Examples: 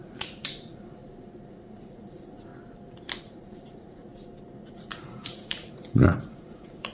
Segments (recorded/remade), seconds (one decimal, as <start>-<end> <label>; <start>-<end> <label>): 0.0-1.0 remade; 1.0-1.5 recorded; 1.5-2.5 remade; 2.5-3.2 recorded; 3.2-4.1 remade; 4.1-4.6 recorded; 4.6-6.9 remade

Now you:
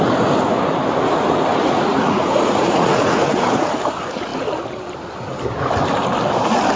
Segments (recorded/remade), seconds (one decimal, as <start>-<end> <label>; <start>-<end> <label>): 0.0-1.5 recorded; 1.5-3.7 remade; 3.7-6.8 recorded

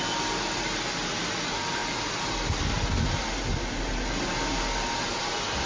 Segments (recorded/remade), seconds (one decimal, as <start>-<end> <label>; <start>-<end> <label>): 0.0-5.7 recorded

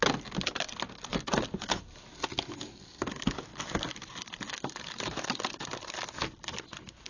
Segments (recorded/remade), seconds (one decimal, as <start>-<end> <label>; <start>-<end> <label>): 0.0-7.1 recorded

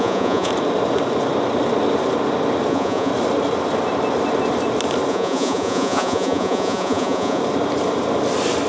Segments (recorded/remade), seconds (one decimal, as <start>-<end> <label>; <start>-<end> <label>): 0.0-0.5 remade; 0.5-2.7 recorded; 2.7-3.1 remade; 3.1-5.1 recorded; 5.1-7.4 remade; 7.4-8.7 recorded